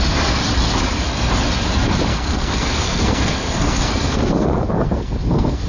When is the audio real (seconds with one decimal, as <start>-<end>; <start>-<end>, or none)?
0.0-2.1